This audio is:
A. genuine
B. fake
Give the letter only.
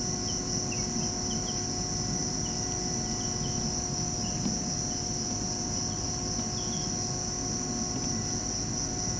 A